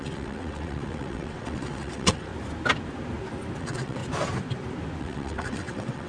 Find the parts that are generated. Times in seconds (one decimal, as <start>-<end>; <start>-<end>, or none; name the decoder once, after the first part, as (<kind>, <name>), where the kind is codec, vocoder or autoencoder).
0.0-2.3 (vocoder, WaveNeXt); 3.6-4.0; 5.0-6.1